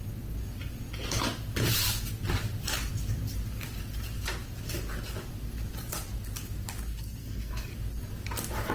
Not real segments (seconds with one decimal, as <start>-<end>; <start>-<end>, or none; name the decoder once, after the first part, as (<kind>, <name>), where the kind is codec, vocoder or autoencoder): 7.2-7.7 (codec, SNAC)